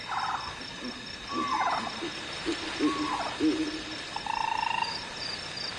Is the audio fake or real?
real